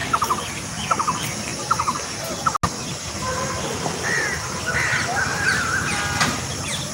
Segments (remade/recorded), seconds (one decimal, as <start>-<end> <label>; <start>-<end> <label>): 0.0-0.5 remade; 0.5-5.3 recorded; 5.3-6.9 remade